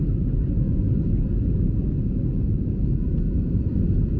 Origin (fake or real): real